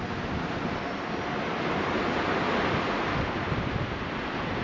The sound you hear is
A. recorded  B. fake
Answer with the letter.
A